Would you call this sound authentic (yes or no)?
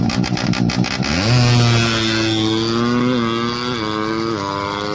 yes